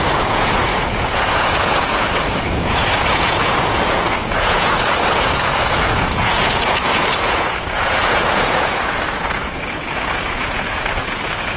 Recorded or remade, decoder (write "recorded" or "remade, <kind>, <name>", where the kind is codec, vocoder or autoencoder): remade, vocoder, Vocos